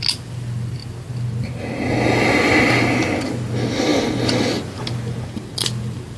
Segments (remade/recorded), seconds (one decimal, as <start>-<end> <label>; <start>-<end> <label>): 0.0-6.2 recorded